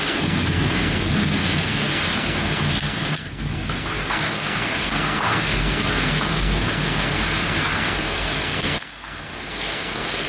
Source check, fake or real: fake